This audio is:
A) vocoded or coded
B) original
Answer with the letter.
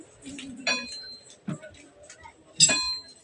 B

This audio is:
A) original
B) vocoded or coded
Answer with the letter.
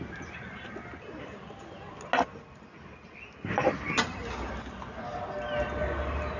A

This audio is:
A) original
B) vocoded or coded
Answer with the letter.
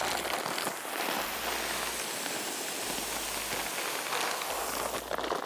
A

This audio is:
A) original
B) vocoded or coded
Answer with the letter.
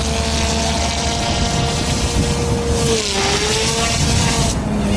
A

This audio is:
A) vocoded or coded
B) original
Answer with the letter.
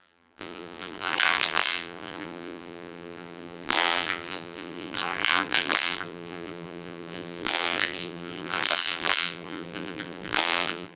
A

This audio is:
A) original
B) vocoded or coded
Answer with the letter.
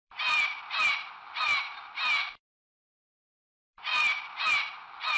B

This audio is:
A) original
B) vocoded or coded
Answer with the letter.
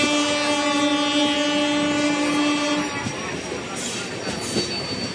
A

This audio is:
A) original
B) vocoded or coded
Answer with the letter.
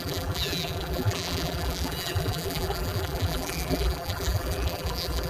B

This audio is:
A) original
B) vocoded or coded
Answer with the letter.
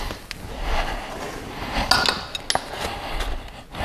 A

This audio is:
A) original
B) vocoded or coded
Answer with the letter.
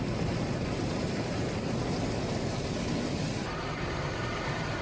B